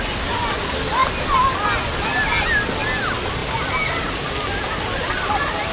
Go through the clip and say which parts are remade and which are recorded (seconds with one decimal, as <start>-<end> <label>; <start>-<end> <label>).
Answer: 0.0-5.7 recorded